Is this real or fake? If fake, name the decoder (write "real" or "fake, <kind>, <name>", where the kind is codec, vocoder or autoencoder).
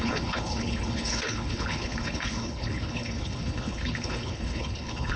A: fake, codec, HILCodec